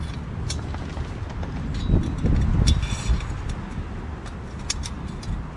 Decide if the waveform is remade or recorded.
recorded